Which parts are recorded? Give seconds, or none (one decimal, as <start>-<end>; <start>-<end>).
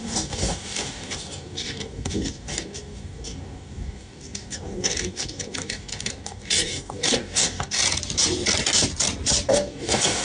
7.8-9.5